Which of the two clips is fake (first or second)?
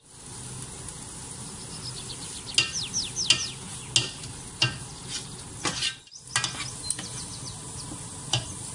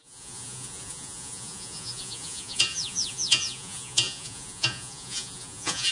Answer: second